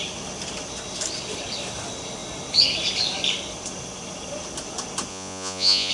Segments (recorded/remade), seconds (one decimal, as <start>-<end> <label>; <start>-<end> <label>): 0.0-5.1 recorded; 5.1-5.9 remade